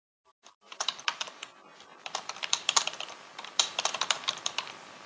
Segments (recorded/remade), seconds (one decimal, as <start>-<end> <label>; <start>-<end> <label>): 0.0-5.1 remade